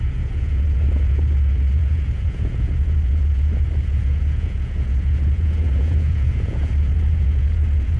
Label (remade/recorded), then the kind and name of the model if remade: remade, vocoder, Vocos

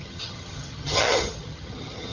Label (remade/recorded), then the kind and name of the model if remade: remade, vocoder, HiFi-GAN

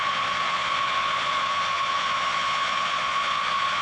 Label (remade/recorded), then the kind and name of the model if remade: remade, vocoder, Vocos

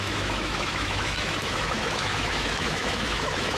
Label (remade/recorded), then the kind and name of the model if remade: remade, autoencoder, DAC-VAE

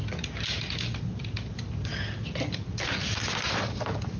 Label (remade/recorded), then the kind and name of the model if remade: recorded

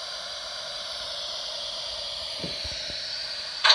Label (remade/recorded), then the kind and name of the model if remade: remade, vocoder, BigVGAN v2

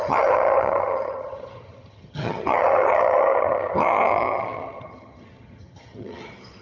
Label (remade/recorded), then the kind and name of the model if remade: remade, vocoder, HiFi-GAN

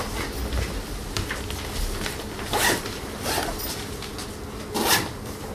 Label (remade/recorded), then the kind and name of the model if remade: recorded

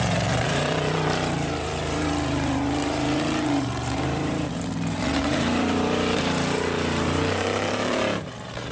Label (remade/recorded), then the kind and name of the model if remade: remade, vocoder, BigVGAN v2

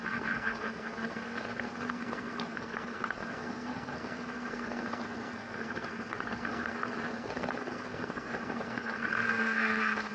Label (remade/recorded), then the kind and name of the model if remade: remade, codec, SNAC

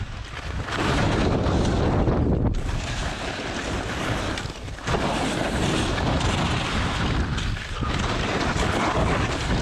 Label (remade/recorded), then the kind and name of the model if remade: recorded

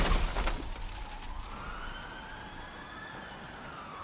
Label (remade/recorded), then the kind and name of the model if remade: recorded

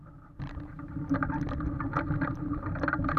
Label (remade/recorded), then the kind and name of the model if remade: recorded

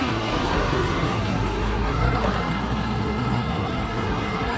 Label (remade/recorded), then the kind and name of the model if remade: remade, codec, SNAC